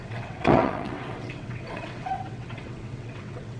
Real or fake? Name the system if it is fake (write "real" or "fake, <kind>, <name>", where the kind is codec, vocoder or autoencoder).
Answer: fake, vocoder, WaveNeXt